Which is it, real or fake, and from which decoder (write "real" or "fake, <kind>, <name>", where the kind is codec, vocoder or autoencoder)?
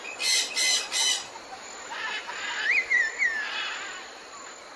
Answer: real